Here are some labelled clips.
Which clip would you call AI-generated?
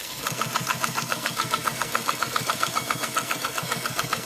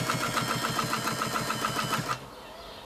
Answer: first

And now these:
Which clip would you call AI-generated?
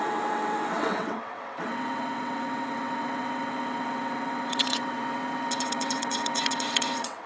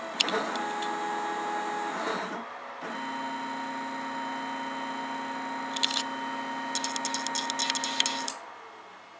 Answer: first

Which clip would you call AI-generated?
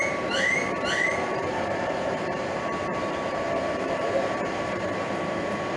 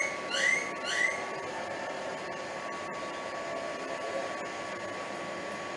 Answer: first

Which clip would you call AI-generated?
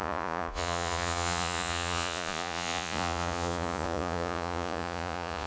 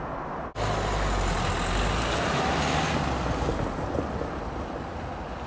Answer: first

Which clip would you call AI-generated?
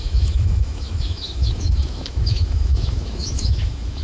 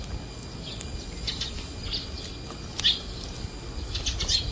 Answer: first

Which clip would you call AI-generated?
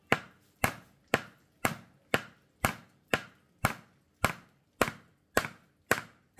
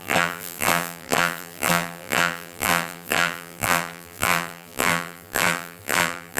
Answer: second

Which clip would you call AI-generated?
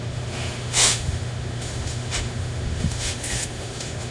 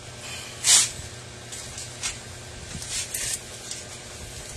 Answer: first